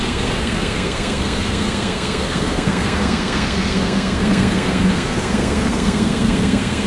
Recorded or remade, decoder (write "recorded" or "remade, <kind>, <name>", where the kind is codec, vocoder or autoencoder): remade, codec, SNAC